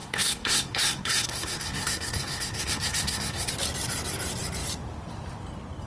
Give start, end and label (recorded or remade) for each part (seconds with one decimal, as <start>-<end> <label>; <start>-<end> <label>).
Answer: 0.0-3.5 remade; 3.5-5.9 recorded